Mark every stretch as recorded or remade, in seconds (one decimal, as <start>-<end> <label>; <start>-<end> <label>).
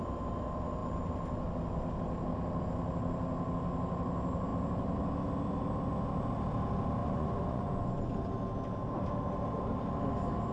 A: 0.0-7.0 recorded; 7.0-8.1 remade; 8.1-10.5 recorded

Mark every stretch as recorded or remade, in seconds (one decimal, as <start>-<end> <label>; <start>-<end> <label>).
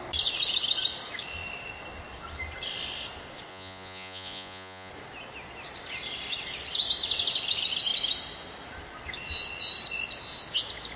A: 0.0-3.5 recorded; 3.5-4.9 remade; 4.9-11.0 recorded